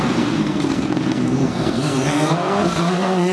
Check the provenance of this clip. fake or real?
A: fake